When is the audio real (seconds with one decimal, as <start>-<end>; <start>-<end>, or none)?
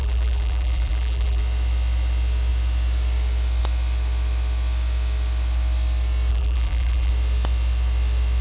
1.4-6.3; 7.1-8.4